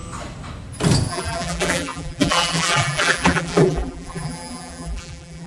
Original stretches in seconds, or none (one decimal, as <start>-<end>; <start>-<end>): 0.0-1.1